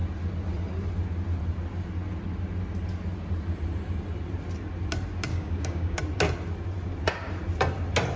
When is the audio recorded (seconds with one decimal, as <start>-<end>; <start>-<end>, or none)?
0.0-5.3; 6.0-8.2